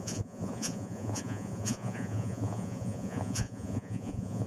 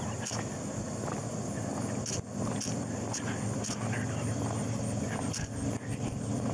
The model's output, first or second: first